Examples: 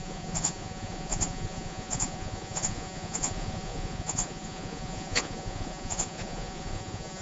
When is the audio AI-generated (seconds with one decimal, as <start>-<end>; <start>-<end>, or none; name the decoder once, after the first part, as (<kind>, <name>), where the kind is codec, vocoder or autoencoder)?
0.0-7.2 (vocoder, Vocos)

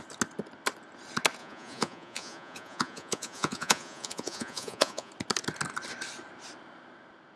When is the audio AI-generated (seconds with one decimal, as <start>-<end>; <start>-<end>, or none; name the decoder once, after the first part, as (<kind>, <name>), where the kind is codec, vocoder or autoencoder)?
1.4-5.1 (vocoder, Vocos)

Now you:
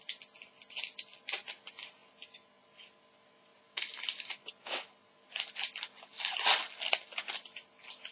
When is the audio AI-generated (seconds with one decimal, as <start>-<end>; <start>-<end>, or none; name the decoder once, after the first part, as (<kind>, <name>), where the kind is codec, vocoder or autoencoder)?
none